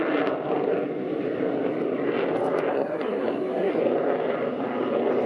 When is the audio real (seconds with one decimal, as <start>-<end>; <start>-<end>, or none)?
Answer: 0.0-2.7; 3.8-5.3